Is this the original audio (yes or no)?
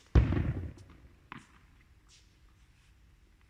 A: yes